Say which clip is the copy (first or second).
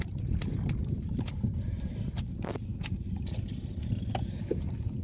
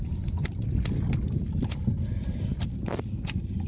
first